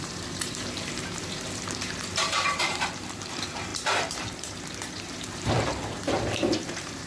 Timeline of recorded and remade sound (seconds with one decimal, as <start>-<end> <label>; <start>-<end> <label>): 0.0-7.1 remade